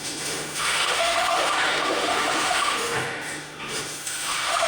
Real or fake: fake